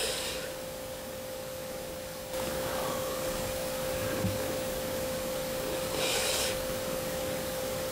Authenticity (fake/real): fake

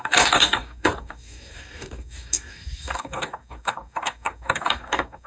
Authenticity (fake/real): fake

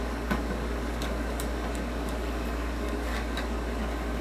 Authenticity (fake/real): fake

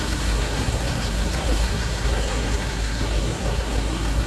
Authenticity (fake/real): fake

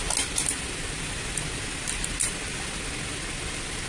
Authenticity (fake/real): real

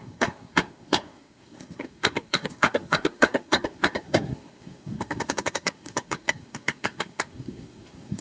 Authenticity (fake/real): fake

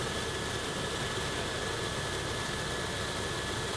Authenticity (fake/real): fake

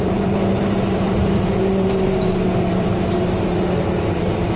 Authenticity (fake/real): fake